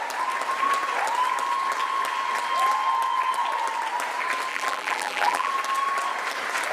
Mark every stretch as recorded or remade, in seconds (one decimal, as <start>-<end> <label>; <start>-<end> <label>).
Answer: 0.0-4.5 recorded; 4.5-5.5 remade; 5.5-6.7 recorded